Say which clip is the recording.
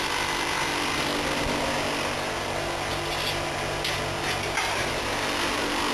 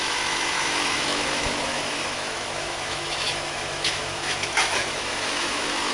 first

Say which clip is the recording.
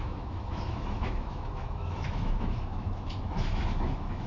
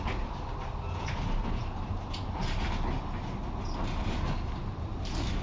second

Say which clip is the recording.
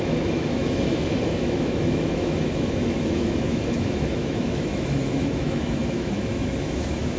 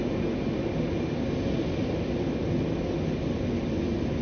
second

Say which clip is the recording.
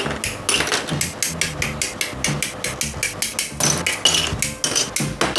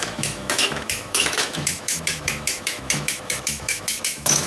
first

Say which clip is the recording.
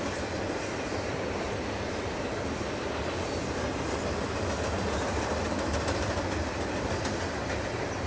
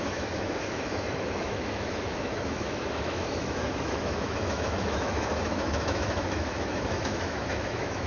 first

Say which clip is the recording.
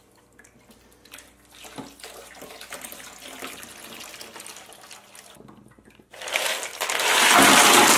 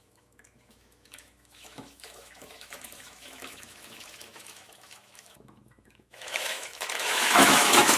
first